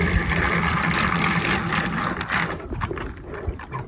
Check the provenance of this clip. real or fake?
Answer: real